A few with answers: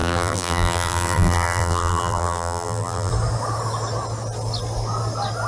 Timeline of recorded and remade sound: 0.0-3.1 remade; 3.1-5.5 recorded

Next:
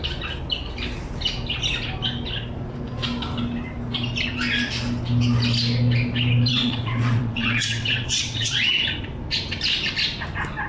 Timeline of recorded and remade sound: 0.0-6.5 recorded; 6.5-8.7 remade; 8.7-10.7 recorded

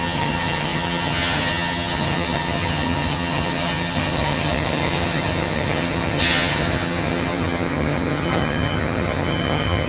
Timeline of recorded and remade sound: 0.0-9.9 remade

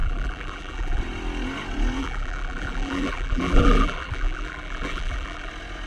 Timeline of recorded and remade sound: 0.0-1.0 remade; 1.0-2.0 recorded; 2.0-5.5 remade; 5.5-5.9 recorded

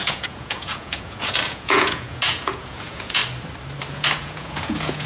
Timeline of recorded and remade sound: 0.0-3.2 remade; 3.2-3.9 recorded; 3.9-5.1 remade

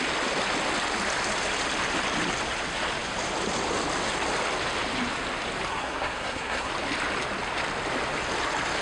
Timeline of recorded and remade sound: 0.0-5.7 recorded; 5.7-6.7 remade; 6.7-8.8 recorded

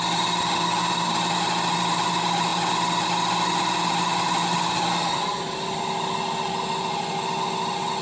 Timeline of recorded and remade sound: 0.0-8.0 recorded